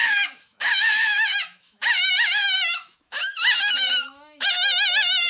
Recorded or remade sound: remade